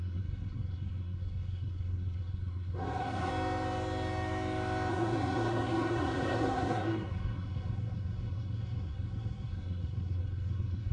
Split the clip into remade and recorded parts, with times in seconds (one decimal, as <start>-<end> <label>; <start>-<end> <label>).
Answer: 0.0-3.3 remade; 3.3-4.9 recorded; 4.9-10.9 remade